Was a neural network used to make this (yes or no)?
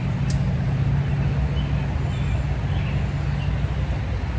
no